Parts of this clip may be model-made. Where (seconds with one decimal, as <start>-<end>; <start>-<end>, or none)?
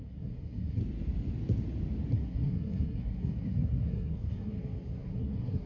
0.0-0.8; 2.1-5.7